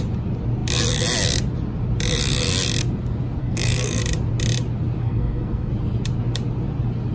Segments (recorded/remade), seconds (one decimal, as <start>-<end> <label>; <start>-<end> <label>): 0.0-3.4 recorded; 3.4-4.0 remade; 4.0-5.0 recorded; 5.0-5.7 remade; 5.7-7.1 recorded